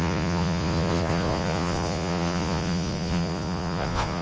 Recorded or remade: remade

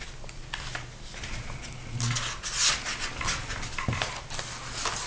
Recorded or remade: recorded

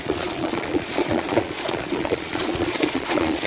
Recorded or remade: remade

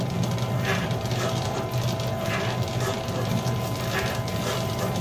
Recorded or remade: recorded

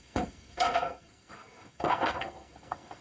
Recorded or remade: remade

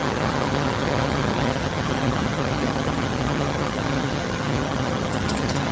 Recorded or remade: remade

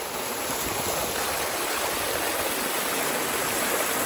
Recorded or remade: recorded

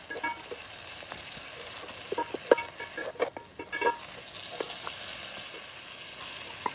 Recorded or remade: recorded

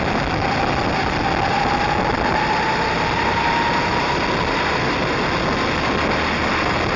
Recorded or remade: recorded